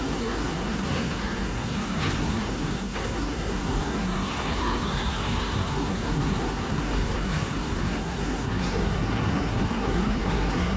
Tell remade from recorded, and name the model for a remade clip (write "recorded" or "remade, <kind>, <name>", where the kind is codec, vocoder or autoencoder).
remade, codec, SNAC